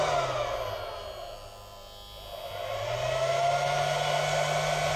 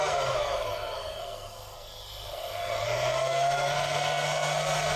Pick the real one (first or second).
first